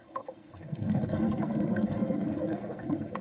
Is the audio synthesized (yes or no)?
yes